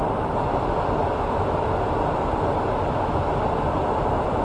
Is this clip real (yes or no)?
yes